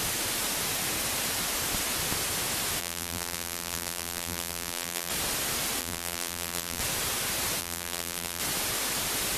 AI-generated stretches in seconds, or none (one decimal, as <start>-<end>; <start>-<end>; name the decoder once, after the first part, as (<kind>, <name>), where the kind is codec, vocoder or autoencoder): 2.8-5.1 (vocoder, BigVGAN v2); 5.8-6.8; 7.6-8.4